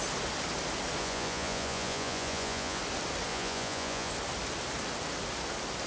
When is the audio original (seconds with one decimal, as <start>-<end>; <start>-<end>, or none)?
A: 0.0-1.0; 2.8-3.3; 4.1-5.9